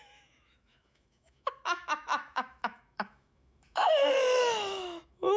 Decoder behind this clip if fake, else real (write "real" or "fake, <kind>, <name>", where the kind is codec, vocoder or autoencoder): fake, autoencoder, DAC-VAE